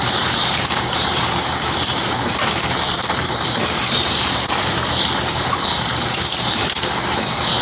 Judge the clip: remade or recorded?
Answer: remade